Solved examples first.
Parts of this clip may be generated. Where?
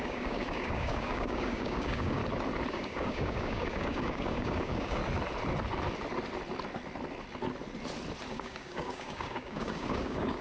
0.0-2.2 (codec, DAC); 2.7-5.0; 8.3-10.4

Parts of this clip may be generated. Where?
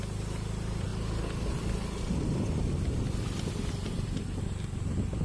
none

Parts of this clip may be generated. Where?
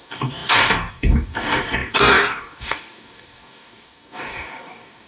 0.0-5.1 (codec, DAC)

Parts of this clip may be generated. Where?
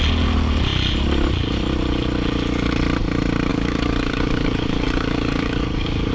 3.5-6.1 (codec, DAC)